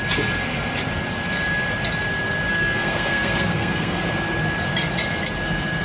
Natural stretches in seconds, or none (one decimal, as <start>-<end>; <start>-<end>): 0.0-2.5; 4.0-5.8

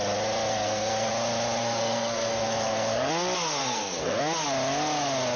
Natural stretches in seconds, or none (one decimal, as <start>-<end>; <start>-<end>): 0.0-0.5; 1.1-1.6; 3.1-3.6; 4.2-5.4

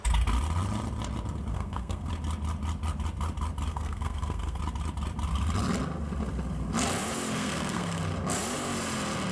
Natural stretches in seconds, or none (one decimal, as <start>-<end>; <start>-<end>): 0.0-1.5; 2.1-3.7; 4.6-7.4; 8.0-9.3

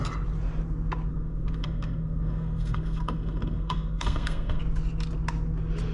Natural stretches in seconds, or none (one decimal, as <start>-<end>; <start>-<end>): 0.0-1.1; 4.6-5.9

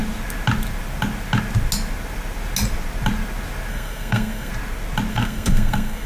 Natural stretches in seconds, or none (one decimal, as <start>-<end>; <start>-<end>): 0.0-3.7; 4.5-5.1

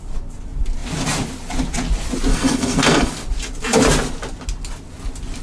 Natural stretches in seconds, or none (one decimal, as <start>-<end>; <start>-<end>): 0.0-2.3; 3.1-5.4

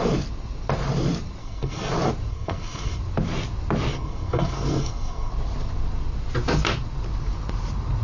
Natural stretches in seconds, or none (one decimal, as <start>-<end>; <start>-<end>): 0.0-1.4; 1.9-2.3; 3.0-3.9; 5.3-8.0